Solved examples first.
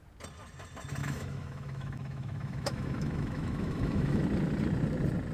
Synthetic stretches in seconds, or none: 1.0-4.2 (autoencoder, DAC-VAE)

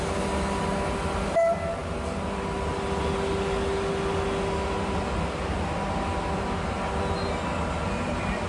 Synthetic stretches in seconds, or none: none

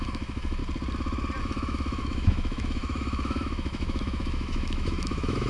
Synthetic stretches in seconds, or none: 0.0-0.6 (autoencoder, DAC-VAE); 1.4-5.5

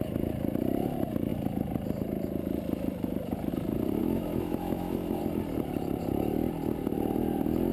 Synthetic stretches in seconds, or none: 4.0-5.2 (autoencoder, DAC-VAE)

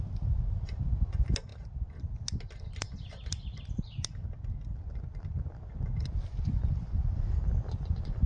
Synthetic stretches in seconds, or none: none

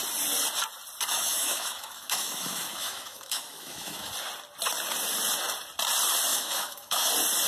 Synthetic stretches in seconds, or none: 1.1-4.1 (autoencoder, DAC-VAE); 6.3-7.1